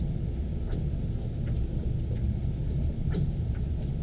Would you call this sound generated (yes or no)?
no